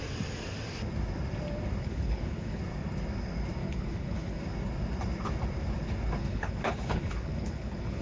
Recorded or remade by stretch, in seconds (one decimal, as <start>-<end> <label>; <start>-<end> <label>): 0.0-1.8 recorded; 1.8-2.6 remade; 2.6-3.6 recorded; 3.6-4.4 remade; 4.4-6.2 recorded; 6.2-8.0 remade